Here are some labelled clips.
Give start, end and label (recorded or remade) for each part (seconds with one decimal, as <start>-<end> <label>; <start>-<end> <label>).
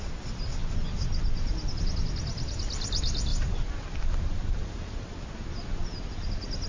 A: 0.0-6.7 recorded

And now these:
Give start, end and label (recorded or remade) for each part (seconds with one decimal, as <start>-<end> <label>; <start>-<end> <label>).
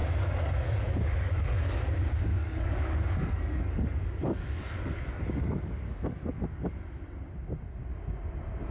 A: 0.0-1.9 remade; 1.9-2.4 recorded; 2.4-6.3 remade; 6.3-8.7 recorded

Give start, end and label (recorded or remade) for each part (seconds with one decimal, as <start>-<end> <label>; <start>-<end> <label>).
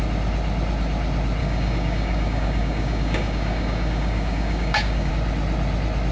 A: 0.0-1.4 recorded; 1.4-5.1 remade; 5.1-6.1 recorded